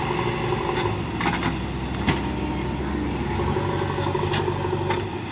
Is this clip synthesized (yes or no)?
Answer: no